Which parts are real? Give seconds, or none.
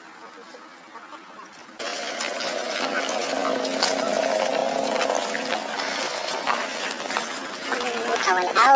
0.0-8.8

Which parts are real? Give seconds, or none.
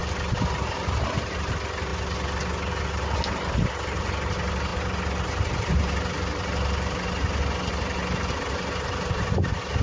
0.0-9.8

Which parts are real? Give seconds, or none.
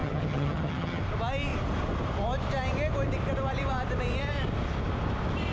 1.0-5.5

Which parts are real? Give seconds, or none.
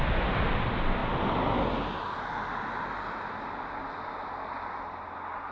0.0-5.5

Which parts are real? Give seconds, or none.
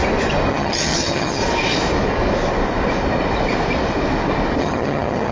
0.0-0.5; 1.4-4.6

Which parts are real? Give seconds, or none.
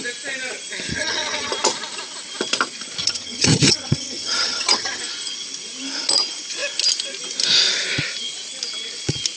0.0-0.9; 1.5-3.0; 5.0-9.4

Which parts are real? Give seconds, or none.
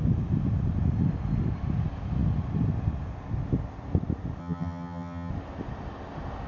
0.0-4.4; 5.3-6.5